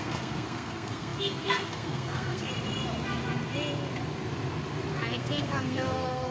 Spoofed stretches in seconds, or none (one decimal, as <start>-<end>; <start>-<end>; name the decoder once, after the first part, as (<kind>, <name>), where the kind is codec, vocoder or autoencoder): 0.0-2.5 (codec, SNAC); 4.9-6.3